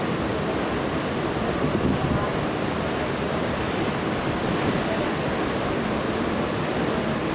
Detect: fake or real real